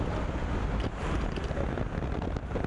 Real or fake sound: real